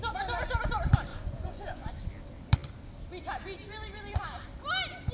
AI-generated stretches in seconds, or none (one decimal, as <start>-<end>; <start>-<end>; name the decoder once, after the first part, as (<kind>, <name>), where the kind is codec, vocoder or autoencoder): 1.1-1.9 (vocoder, Vocos)